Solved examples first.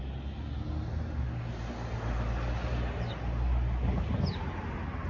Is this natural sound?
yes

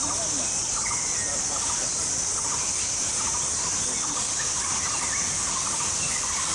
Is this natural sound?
yes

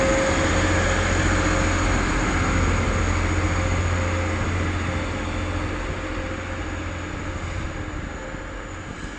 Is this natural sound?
yes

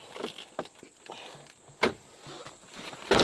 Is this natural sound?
yes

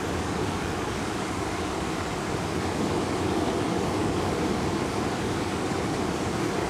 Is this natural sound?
no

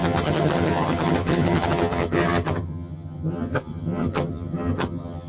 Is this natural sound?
no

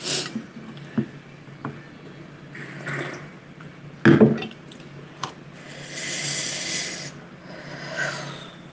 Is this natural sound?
yes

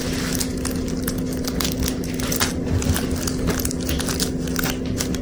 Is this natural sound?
yes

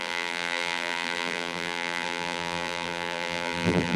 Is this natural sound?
no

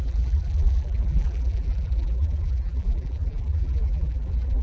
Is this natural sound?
no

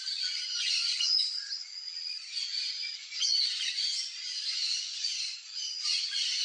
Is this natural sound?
no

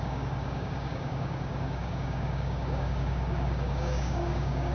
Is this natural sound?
no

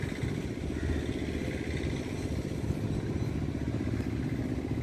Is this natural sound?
yes